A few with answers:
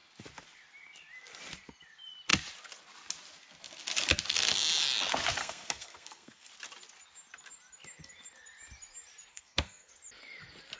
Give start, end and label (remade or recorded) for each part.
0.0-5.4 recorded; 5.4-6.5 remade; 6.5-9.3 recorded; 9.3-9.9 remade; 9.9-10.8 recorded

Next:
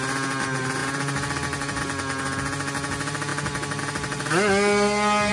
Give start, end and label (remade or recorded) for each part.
0.0-5.3 recorded

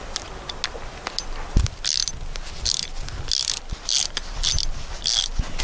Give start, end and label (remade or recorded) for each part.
0.0-5.6 recorded

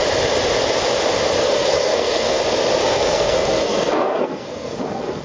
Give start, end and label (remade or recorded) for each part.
0.0-1.4 recorded; 1.4-2.4 remade; 2.4-2.8 recorded; 2.8-5.2 remade

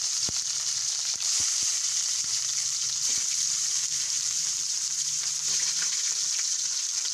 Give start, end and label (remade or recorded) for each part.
0.0-7.1 remade

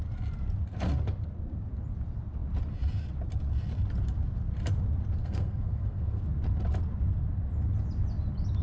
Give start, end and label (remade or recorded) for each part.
0.0-5.2 recorded; 5.2-6.2 remade; 6.2-8.6 recorded

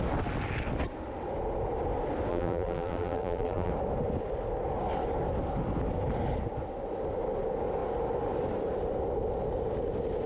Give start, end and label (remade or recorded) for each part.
0.0-2.3 recorded; 2.3-3.7 remade; 3.7-10.3 recorded

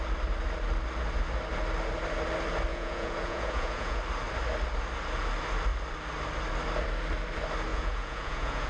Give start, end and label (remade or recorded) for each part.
0.0-2.7 recorded; 2.7-4.0 remade; 4.0-7.7 recorded; 7.7-8.7 remade